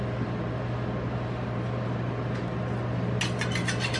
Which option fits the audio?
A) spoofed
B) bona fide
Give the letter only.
B